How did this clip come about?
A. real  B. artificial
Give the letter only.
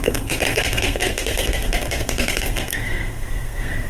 B